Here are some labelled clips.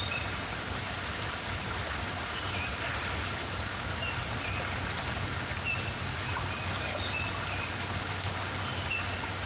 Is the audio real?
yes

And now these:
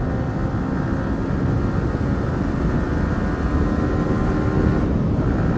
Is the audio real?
yes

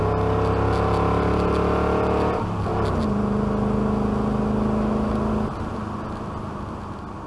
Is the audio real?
yes